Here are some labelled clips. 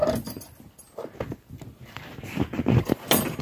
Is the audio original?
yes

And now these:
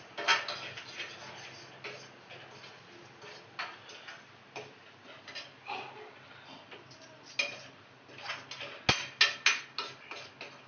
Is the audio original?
yes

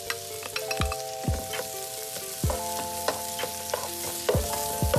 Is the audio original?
yes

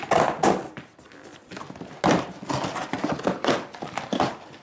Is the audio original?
yes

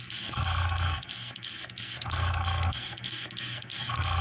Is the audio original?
no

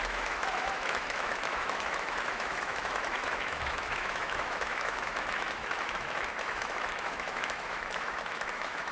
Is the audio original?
no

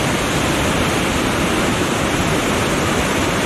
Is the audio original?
yes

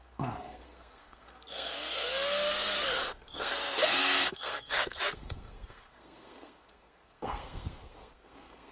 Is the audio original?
no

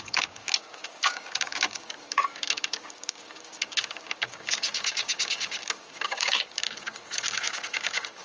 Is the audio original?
no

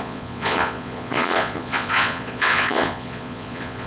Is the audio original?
no